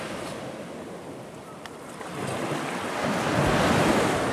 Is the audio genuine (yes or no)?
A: yes